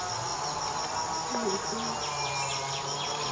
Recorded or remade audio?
recorded